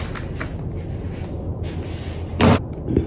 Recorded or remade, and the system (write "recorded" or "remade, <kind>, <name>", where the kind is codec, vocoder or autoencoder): recorded